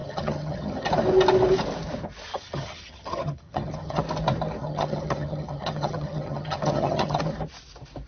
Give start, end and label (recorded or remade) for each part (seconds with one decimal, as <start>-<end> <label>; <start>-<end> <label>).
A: 0.0-0.9 remade; 0.9-2.3 recorded; 2.3-4.0 remade; 4.0-4.6 recorded; 4.6-7.2 remade; 7.2-8.1 recorded